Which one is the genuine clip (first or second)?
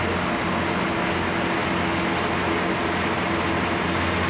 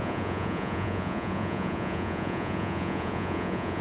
first